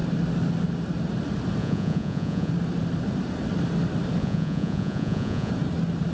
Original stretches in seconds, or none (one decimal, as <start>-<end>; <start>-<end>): 0.0-1.6; 2.5-4.2; 5.5-6.1